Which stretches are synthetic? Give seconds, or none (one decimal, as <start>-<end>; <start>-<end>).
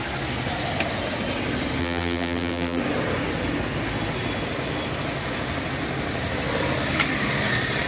1.8-2.8